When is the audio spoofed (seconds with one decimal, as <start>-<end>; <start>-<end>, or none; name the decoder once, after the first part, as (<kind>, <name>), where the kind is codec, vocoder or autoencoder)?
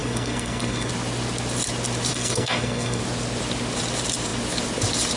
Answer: 0.0-0.9 (codec, SNAC); 2.1-3.0